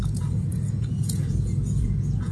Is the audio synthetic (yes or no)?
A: yes